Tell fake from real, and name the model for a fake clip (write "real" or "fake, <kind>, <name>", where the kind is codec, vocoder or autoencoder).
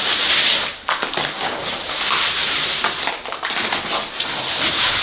real